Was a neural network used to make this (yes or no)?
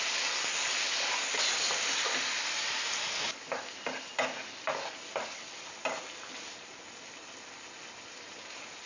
no